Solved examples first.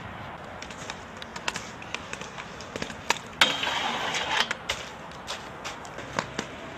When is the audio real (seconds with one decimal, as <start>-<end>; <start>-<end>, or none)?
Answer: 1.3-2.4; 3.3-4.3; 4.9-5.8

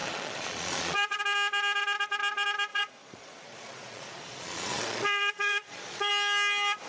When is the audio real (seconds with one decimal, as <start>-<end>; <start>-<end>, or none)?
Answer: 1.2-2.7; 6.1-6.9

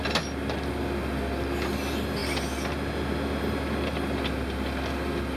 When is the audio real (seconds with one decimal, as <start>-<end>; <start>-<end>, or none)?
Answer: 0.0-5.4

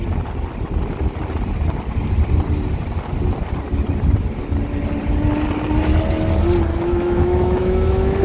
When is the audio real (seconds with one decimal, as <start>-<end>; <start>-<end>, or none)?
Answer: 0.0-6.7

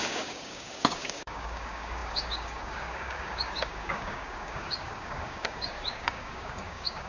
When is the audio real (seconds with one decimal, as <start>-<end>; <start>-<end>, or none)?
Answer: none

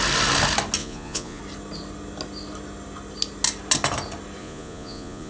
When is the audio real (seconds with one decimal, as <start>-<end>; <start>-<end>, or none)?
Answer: 0.0-0.8; 1.4-4.4

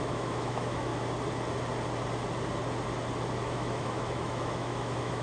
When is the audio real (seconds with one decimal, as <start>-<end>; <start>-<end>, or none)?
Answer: 0.9-3.4

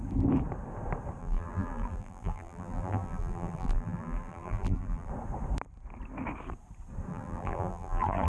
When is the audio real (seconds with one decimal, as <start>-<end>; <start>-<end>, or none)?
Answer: 0.0-1.2; 5.1-7.1